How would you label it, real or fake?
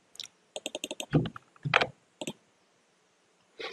real